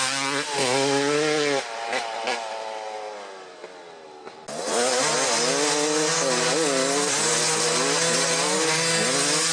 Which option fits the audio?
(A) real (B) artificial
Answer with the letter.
A